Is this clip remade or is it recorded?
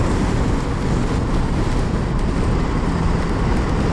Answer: recorded